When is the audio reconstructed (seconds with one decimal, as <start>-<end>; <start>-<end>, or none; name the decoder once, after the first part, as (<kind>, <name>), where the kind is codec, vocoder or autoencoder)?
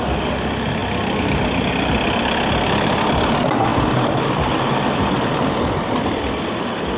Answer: none